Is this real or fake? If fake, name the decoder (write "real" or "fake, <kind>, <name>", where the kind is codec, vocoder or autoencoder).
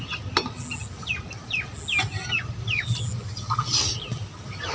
real